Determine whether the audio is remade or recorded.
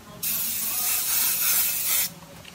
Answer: remade